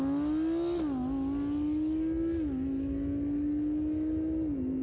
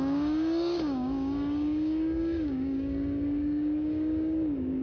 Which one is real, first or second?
first